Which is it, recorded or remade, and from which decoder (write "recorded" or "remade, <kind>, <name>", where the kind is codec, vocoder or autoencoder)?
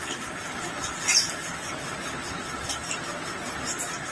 recorded